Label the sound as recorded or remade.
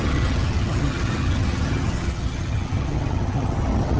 remade